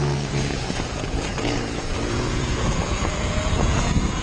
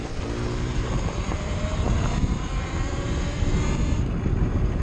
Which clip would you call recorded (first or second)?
second